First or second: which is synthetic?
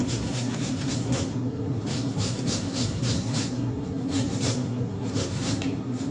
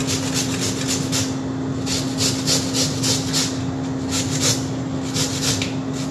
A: first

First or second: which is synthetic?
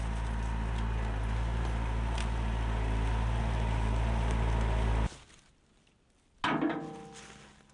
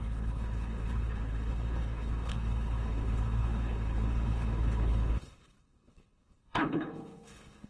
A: second